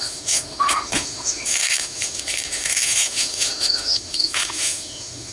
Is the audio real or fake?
fake